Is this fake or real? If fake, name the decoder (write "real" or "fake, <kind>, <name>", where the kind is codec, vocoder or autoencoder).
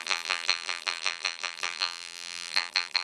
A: fake, vocoder, BigVGAN v2